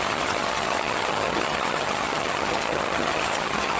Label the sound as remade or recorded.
remade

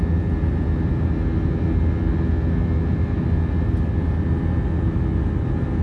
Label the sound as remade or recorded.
recorded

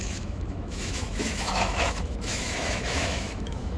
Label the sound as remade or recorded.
remade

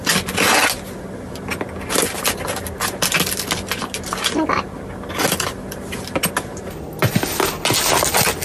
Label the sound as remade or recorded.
recorded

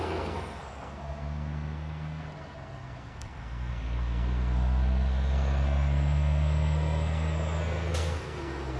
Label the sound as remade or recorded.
remade